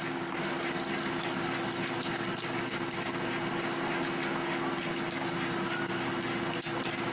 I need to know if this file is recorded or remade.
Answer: recorded